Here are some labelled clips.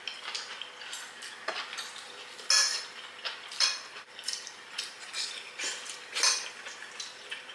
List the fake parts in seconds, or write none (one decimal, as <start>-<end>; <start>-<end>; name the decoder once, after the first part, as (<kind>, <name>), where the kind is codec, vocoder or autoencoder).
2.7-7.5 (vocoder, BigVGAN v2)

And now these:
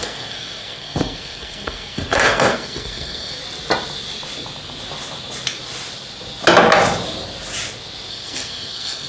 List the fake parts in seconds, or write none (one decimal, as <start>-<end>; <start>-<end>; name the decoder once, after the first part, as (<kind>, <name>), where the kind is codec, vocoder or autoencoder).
0.0-3.4 (codec, SNAC); 8.1-9.1

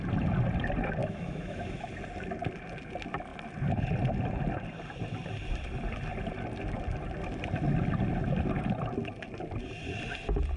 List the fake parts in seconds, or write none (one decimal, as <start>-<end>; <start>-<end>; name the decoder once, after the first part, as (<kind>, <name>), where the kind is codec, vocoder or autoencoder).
1.0-1.9 (autoencoder, DAC-VAE)

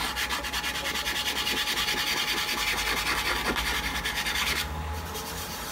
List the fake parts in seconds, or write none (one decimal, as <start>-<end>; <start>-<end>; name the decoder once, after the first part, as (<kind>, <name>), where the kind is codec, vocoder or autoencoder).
3.9-4.9 (codec, DAC)